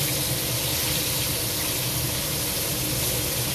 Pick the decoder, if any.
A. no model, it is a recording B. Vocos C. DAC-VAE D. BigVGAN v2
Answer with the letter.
A